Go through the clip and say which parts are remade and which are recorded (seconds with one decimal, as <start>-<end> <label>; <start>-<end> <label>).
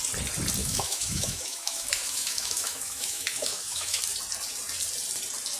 0.0-0.6 recorded; 0.6-4.0 remade; 4.0-5.6 recorded